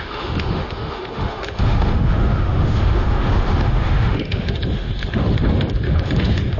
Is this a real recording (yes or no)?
no